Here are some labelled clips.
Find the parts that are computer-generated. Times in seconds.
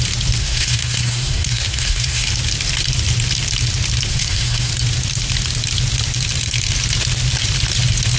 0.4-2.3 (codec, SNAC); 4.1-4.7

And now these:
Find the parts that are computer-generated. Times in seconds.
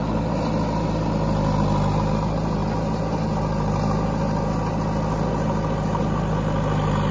none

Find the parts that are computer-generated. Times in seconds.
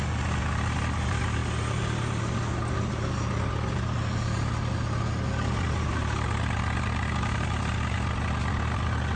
none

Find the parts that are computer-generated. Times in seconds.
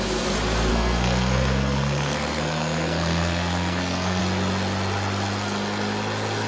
0.7-4.2 (codec, SNAC)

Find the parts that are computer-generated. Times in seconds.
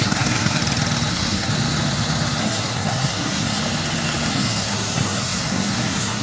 0.0-0.6 (codec, SNAC); 1.1-1.5; 2.4-3.6; 4.3-6.2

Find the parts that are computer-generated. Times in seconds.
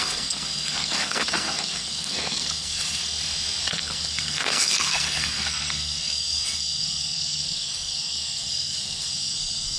0.0-3.0 (codec, SNAC); 3.6-9.8